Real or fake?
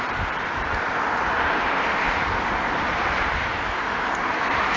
fake